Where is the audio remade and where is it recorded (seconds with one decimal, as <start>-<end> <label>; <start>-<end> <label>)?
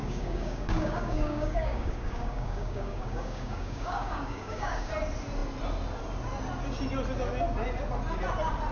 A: 0.0-4.9 remade; 4.9-8.7 recorded